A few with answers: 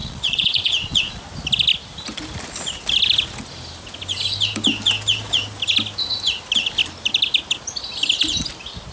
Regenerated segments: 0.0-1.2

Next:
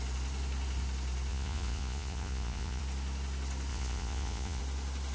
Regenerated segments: 1.3-2.8; 3.7-4.6

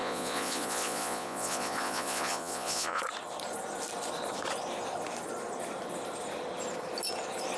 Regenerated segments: 0.0-3.0

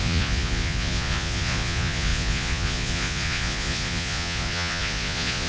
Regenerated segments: 0.0-5.5

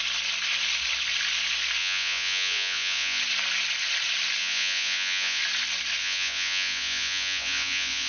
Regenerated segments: 1.8-3.2; 4.4-5.4; 6.0-8.1

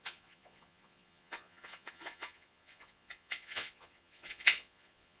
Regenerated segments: 0.0-5.2

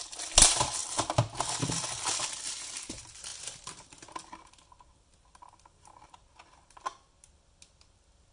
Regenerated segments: none